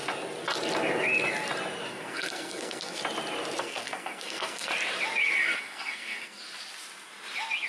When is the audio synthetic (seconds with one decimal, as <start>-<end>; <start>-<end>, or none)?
1.9-3.0; 3.6-4.7; 5.6-6.4